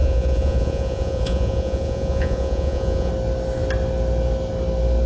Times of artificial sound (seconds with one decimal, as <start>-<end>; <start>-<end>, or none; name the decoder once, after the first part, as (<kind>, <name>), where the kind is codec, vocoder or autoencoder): 0.0-3.1 (vocoder, Vocos)